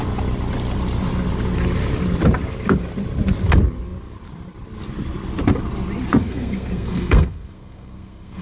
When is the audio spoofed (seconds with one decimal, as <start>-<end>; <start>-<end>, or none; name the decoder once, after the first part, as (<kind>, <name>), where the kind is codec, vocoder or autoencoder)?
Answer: 6.2-8.4 (codec, SNAC)